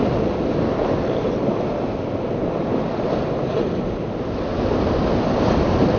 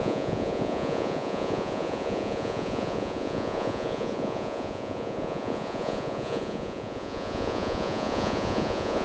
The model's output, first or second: second